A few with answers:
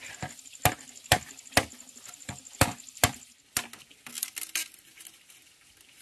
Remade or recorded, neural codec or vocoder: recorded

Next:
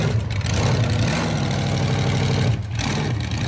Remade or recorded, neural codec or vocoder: recorded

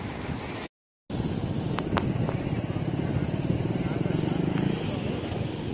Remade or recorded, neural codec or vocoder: recorded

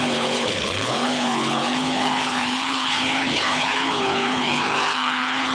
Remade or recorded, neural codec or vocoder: remade, codec, HILCodec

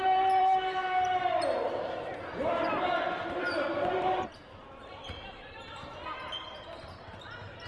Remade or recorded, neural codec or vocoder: remade, vocoder, BigVGAN v2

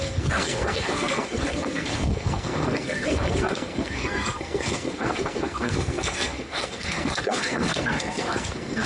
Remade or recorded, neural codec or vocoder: remade, codec, SNAC